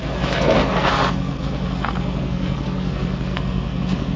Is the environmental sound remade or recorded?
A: remade